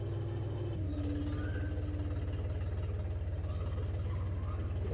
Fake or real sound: real